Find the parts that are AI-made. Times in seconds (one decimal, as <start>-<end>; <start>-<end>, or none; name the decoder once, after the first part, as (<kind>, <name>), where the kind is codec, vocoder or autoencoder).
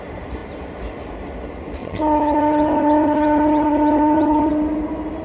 1.8-4.5 (vocoder, HiFi-GAN)